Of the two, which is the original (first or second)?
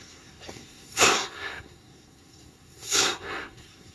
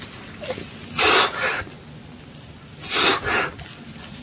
second